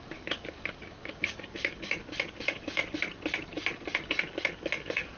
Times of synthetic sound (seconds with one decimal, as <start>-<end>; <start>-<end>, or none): 0.0-2.8; 4.1-5.2